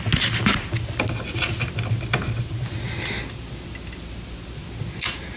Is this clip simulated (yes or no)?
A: no